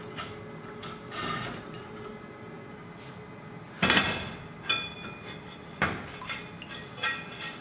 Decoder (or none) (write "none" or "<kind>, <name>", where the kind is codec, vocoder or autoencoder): none